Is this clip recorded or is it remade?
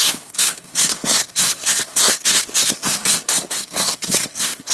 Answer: remade